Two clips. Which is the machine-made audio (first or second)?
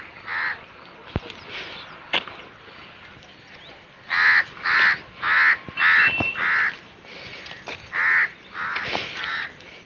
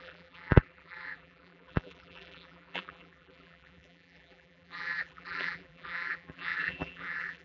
second